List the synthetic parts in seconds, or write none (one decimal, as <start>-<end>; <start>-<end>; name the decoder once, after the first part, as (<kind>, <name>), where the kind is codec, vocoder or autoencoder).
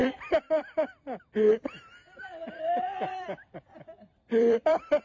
0.0-1.0 (vocoder, BigVGAN v2); 1.9-5.0